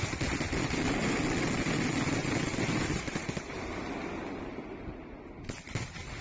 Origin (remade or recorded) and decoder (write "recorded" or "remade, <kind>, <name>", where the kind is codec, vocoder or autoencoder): recorded